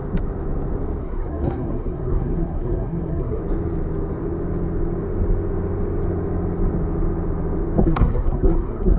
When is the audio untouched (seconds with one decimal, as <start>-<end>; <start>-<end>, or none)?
0.0-1.0; 3.4-7.8